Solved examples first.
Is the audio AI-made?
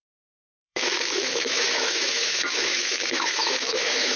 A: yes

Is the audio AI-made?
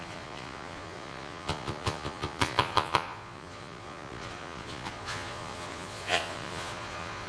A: yes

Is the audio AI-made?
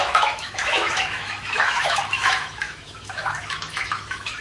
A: yes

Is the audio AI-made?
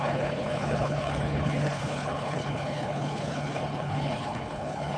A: yes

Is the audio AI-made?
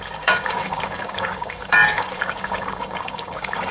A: yes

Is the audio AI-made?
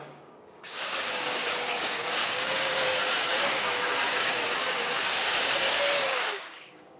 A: yes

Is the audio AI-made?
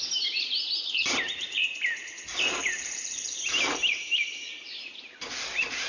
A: yes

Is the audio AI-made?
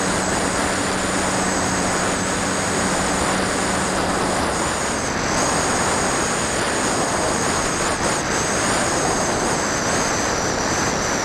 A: no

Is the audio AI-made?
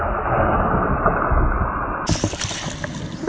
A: no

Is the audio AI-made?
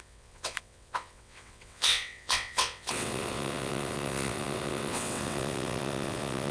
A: yes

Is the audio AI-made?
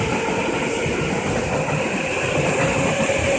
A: no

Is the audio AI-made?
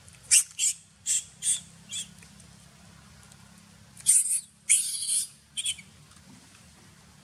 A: no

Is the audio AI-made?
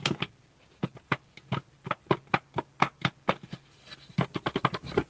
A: no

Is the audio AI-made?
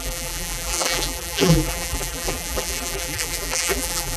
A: yes